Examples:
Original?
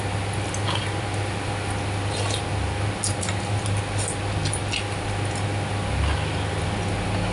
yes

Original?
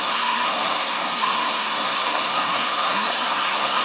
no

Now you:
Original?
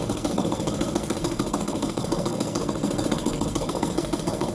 no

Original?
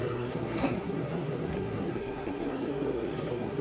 no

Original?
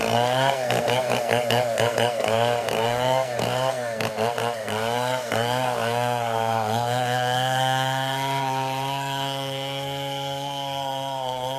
no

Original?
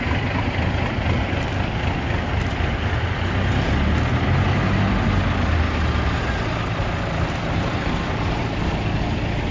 yes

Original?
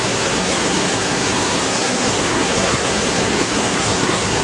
no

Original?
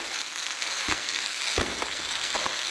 no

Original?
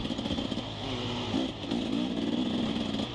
yes